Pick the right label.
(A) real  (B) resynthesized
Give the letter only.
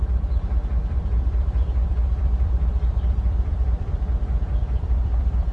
B